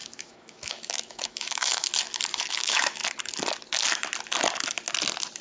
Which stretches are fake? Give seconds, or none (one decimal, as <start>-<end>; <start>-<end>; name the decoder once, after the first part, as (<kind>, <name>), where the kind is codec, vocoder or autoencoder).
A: 0.0-1.9 (autoencoder, DAC-VAE); 2.5-3.0